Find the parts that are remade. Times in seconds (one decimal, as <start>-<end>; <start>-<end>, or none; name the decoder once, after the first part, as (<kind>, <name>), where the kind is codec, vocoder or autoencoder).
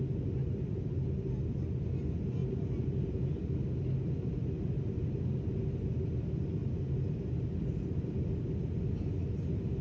none